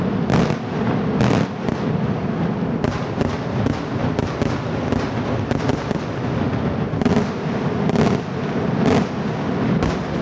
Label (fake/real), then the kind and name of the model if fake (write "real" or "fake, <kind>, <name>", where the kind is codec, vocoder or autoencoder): real